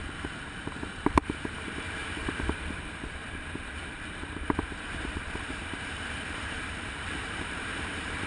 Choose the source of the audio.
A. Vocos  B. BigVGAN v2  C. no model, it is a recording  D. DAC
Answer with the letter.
B